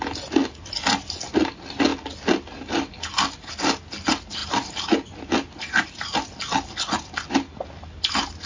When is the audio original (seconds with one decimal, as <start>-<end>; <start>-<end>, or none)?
0.0-8.5